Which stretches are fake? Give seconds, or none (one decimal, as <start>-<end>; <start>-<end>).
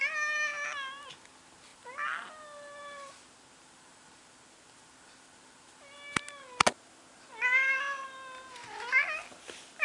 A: none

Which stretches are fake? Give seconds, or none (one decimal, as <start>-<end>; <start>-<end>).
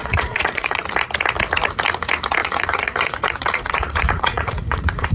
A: 0.0-0.8; 2.4-5.1